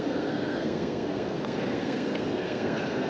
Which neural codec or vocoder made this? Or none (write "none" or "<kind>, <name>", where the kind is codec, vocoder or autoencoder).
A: codec, SNAC